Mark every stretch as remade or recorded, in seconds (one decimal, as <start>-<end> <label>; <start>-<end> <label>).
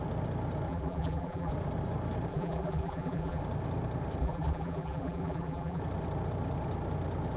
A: 0.0-0.7 recorded; 0.7-1.5 remade; 1.5-2.3 recorded; 2.3-3.4 remade; 3.4-4.2 recorded; 4.2-5.8 remade; 5.8-7.4 recorded